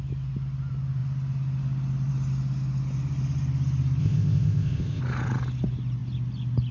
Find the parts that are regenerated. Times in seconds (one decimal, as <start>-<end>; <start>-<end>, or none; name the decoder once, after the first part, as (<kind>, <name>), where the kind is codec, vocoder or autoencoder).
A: 4.0-5.0 (codec, ZipCodec)